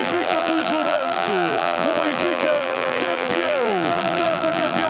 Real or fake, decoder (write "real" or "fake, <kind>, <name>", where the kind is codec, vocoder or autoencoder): fake, vocoder, BigVGAN v2